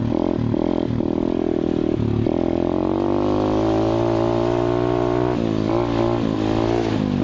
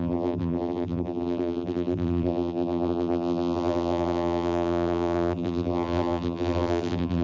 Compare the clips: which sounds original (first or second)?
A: first